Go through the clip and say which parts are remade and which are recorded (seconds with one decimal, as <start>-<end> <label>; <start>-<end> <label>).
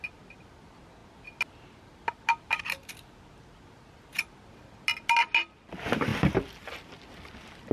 0.0-7.7 recorded